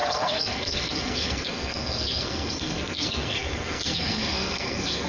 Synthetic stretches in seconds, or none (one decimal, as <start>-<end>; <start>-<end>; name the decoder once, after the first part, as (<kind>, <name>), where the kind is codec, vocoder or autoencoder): 0.0-5.1 (codec, SNAC)